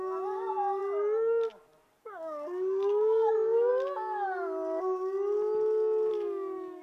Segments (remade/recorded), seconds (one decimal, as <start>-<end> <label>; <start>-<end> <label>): 0.0-0.8 remade; 0.8-2.0 recorded; 2.0-3.7 remade; 3.7-6.1 recorded; 6.1-6.8 remade

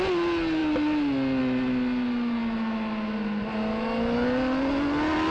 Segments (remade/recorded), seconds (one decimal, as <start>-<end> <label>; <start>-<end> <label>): 0.0-5.3 recorded